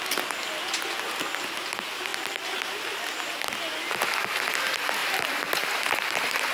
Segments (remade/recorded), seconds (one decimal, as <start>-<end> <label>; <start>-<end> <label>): 0.0-5.0 recorded; 5.0-6.5 remade